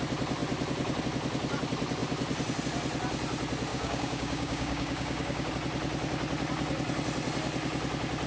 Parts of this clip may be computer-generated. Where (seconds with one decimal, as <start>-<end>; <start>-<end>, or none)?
3.7-5.5